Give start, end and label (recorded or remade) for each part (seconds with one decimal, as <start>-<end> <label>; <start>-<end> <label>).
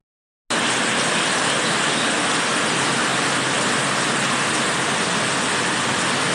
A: 0.0-6.3 recorded